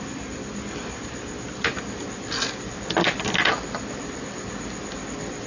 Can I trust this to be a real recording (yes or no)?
yes